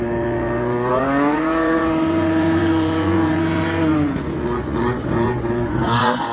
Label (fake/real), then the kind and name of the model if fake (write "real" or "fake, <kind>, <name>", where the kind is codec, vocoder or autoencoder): fake, vocoder, Vocos